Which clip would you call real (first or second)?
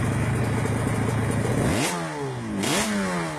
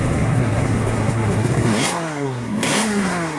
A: first